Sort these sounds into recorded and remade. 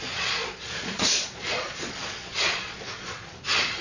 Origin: remade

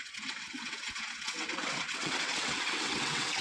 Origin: remade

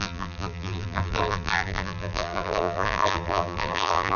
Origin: remade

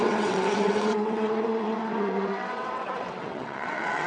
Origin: remade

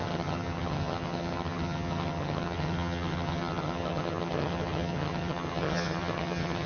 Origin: remade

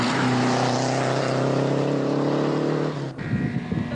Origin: recorded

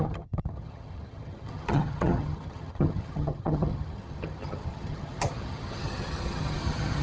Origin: remade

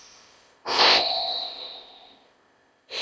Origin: remade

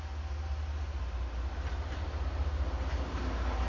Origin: recorded